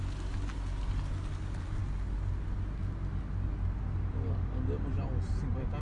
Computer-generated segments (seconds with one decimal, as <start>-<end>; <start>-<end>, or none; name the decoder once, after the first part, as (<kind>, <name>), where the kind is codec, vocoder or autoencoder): none